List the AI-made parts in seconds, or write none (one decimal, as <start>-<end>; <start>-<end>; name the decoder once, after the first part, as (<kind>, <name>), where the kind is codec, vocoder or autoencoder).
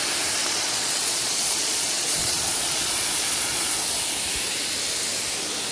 0.4-3.8 (vocoder, Vocos)